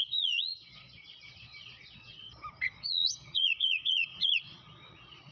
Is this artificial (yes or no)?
yes